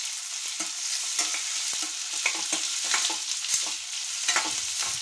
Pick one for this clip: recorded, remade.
recorded